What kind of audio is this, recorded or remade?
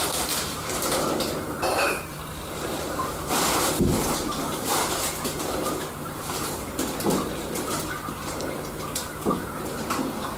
remade